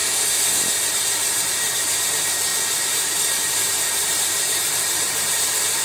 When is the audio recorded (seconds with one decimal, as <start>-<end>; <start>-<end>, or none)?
0.0-2.1; 2.5-3.6